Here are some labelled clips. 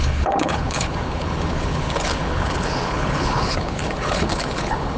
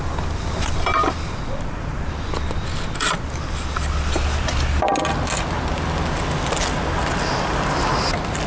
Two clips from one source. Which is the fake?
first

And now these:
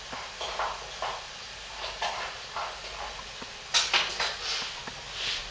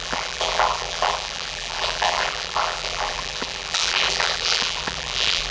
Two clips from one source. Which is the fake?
second